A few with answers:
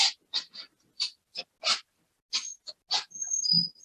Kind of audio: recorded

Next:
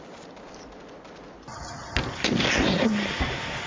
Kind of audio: recorded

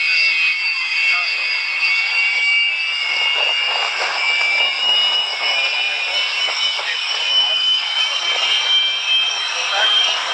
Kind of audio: remade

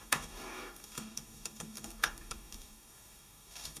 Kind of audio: remade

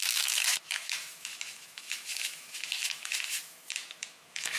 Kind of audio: remade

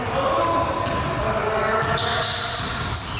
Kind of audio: recorded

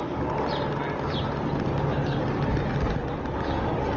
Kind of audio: recorded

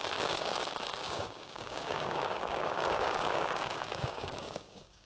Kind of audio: remade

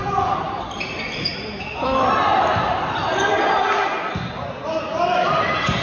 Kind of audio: recorded